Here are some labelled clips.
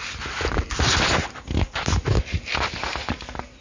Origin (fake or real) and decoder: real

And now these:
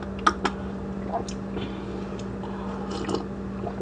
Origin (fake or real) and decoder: real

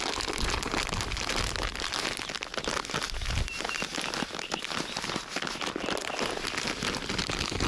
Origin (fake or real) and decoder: real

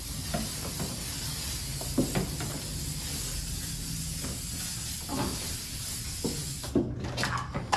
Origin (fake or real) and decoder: real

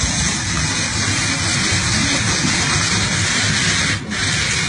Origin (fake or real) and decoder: real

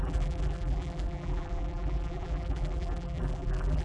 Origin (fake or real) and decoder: fake, vocoder, BigVGAN v2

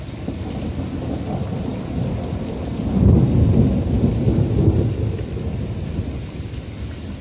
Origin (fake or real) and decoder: real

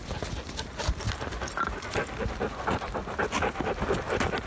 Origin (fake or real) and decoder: real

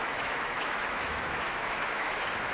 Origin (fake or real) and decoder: fake, autoencoder, DAC-VAE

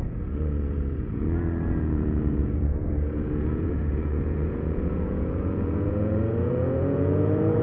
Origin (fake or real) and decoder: fake, vocoder, Vocos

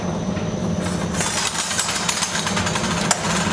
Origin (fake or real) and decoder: real